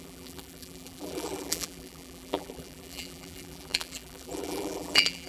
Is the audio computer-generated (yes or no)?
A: yes